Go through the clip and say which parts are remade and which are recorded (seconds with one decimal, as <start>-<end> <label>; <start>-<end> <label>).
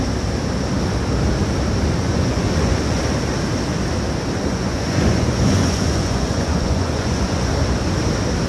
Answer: 0.0-2.0 recorded; 2.0-3.0 remade; 3.0-4.5 recorded; 4.5-7.5 remade; 7.5-8.5 recorded